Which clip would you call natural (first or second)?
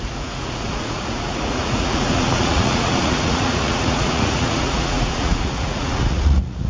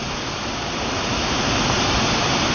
second